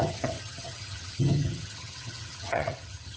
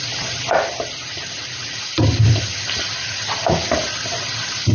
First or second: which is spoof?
first